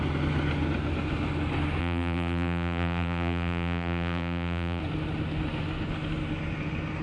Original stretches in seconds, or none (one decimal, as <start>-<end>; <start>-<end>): 0.0-1.8; 4.8-7.0